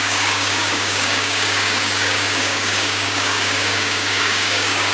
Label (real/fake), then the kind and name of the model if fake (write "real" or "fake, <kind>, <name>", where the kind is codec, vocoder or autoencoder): fake, codec, DAC